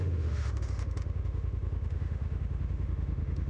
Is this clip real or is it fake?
fake